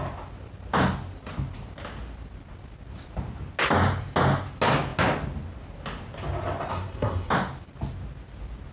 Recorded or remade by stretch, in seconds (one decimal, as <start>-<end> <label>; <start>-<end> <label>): 0.0-6.7 recorded; 6.7-7.3 remade; 7.3-8.7 recorded